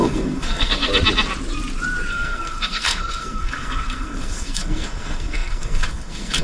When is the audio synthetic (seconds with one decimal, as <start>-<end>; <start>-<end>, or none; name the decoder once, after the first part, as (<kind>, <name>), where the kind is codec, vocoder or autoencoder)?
0.0-0.9 (codec, SNAC); 2.1-6.4